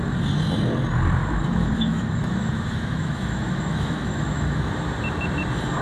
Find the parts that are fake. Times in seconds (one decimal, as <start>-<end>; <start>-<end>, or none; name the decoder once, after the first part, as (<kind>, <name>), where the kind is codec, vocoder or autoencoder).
1.2-4.7 (autoencoder, DAC-VAE)

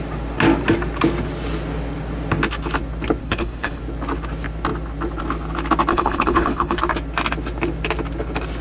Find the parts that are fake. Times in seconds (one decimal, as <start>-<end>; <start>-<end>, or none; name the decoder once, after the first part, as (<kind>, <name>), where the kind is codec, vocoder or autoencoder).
3.2-3.8 (codec, HILCodec); 5.9-6.8